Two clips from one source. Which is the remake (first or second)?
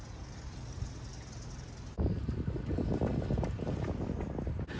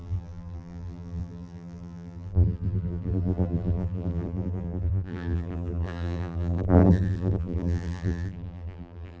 second